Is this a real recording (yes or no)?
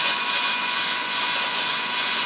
no